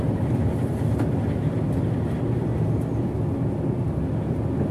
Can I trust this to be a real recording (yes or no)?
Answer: yes